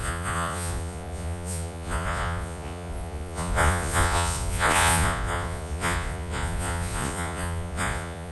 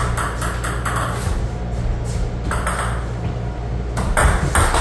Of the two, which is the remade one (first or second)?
first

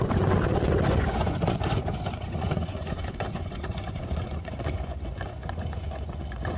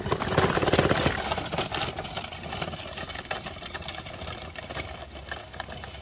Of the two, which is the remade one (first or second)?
first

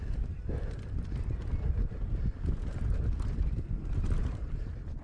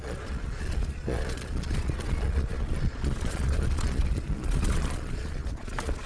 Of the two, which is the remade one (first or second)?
second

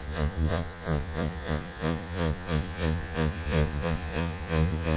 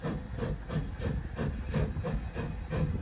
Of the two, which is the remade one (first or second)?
first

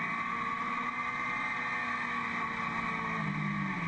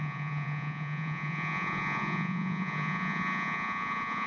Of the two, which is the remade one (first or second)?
second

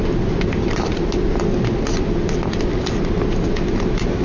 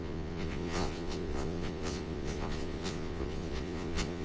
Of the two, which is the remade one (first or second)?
second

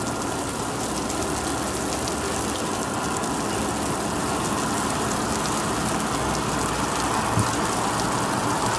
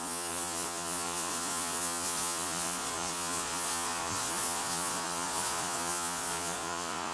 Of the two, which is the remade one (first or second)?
second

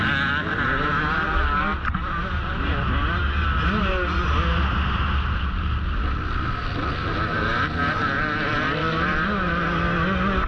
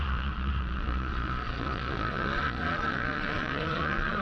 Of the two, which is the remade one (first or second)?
second